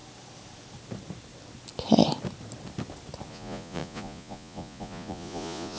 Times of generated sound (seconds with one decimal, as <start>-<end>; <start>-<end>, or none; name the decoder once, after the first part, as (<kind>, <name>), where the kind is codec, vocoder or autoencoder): 3.3-5.8 (vocoder, Vocos)